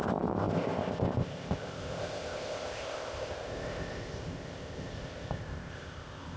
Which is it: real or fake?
fake